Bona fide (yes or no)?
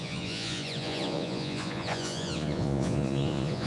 no